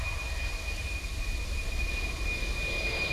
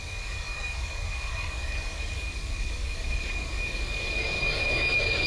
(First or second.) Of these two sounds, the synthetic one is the second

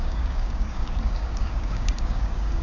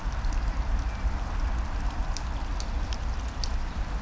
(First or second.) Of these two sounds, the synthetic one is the first